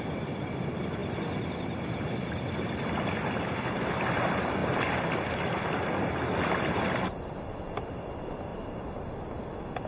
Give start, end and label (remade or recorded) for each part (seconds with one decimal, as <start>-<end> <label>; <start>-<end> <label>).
0.0-9.9 recorded